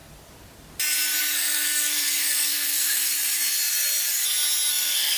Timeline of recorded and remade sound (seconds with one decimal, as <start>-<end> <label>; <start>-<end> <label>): 0.0-1.2 recorded; 1.2-3.1 remade; 3.1-4.7 recorded; 4.7-5.2 remade